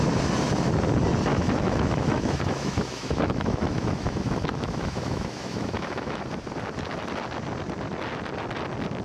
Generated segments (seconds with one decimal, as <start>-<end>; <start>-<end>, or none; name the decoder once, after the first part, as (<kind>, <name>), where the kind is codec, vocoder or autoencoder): 1.3-6.2 (autoencoder, DAC-VAE)